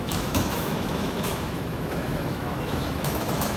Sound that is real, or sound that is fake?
fake